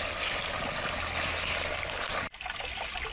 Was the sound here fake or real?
real